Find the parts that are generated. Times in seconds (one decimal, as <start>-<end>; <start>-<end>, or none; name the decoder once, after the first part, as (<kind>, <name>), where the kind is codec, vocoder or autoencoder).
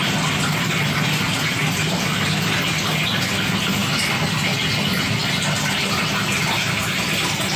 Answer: none